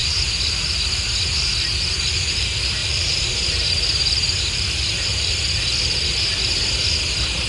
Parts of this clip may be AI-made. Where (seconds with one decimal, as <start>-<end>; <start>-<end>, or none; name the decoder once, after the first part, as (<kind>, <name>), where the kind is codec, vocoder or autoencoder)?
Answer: 0.0-0.8 (vocoder, BigVGAN v2); 2.8-5.3